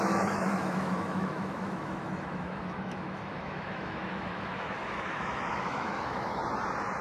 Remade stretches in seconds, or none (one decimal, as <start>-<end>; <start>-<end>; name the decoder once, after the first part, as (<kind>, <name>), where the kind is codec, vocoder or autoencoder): 0.0-6.4 (autoencoder, DAC-VAE)